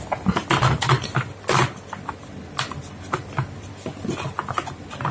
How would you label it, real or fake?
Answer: real